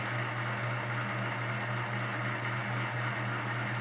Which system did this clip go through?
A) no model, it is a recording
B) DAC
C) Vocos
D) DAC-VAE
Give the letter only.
A